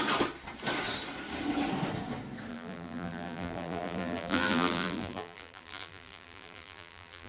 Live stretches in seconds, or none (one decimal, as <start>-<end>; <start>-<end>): 0.0-2.5